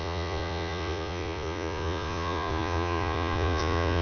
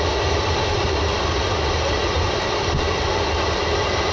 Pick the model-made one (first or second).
first